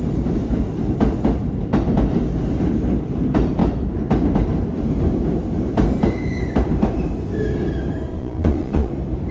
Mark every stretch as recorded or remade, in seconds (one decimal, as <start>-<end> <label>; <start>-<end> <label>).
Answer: 0.0-8.1 recorded; 8.1-8.9 remade; 8.9-9.3 recorded